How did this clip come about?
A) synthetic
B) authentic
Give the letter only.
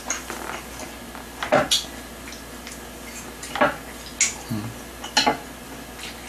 B